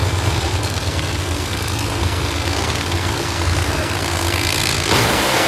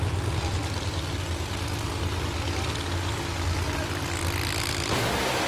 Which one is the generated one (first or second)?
first